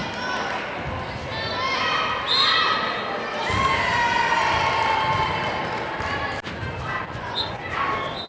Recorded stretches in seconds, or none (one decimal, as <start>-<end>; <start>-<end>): 0.0-7.0; 7.6-8.3